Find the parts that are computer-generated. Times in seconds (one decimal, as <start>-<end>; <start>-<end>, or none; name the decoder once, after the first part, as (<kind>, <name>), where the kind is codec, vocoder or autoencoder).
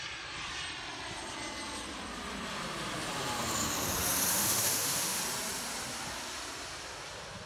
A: 4.3-5.2 (autoencoder, DAC-VAE)